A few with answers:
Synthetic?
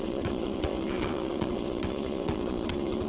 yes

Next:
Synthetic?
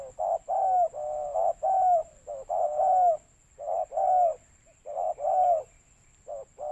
no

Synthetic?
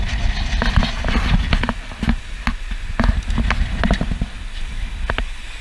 no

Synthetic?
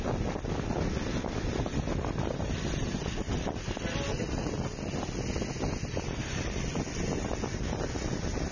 no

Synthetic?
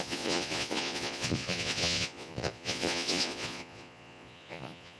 yes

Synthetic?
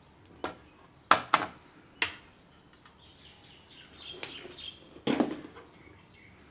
no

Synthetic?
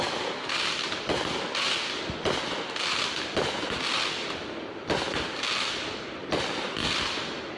no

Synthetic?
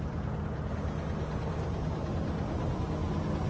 no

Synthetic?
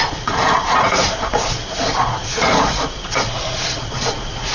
yes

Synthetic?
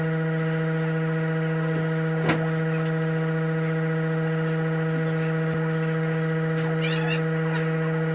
no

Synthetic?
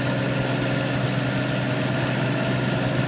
no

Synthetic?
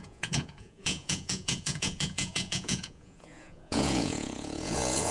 yes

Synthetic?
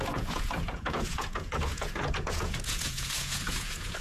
yes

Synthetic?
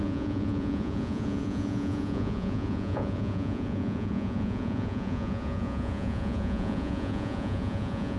yes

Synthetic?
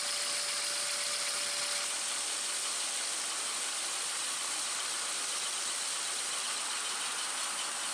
no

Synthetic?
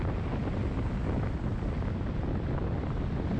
no